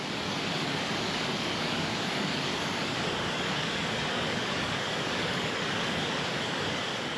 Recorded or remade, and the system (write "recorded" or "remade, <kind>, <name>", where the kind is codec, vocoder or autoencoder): remade, codec, DAC